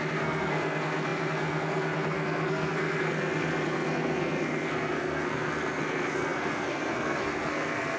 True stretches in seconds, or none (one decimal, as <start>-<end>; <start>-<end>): none